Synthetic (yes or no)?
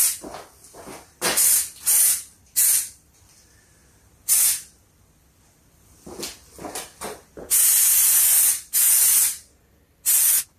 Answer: no